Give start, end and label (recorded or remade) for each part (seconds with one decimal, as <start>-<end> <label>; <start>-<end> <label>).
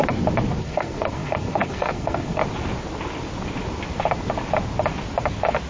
0.0-0.6 recorded; 0.6-2.4 remade; 2.4-5.7 recorded